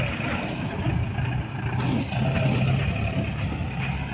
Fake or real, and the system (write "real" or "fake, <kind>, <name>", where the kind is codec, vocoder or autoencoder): real